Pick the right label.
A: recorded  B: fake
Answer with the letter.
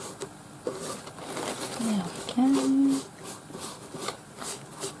A